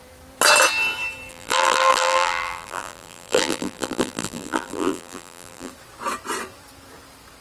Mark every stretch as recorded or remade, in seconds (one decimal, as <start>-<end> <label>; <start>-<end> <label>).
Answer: 0.0-1.3 recorded; 1.3-5.7 remade; 5.7-7.4 recorded